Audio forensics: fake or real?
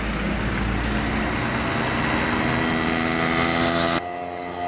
real